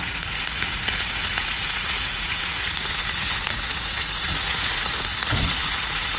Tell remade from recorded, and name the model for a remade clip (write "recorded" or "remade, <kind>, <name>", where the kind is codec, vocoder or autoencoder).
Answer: remade, vocoder, Vocos